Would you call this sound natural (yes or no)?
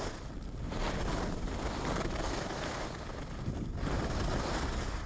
yes